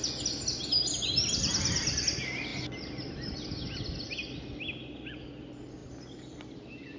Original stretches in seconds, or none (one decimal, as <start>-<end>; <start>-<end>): 0.0-7.0